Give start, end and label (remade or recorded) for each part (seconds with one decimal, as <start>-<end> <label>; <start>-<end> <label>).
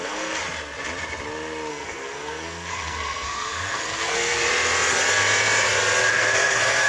0.0-0.4 remade; 0.4-1.7 recorded; 1.7-4.4 remade; 4.4-6.1 recorded; 6.1-6.9 remade